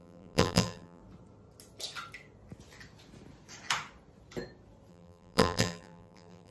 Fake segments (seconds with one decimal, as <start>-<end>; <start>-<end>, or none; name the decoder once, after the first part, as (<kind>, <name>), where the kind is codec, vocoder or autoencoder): 0.0-1.0 (vocoder, BigVGAN v2); 4.9-6.5